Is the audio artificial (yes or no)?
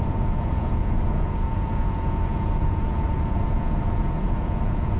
yes